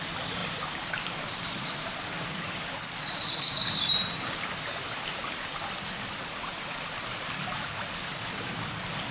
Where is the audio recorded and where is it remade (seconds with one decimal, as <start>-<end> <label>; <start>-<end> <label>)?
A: 0.0-0.4 recorded; 0.4-1.2 remade; 1.2-5.5 recorded; 5.5-7.0 remade; 7.0-9.1 recorded